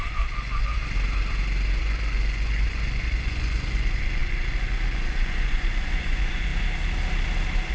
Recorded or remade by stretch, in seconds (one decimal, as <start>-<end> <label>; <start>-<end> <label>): 0.0-0.8 remade; 0.8-1.8 recorded; 1.8-6.5 remade; 6.5-7.7 recorded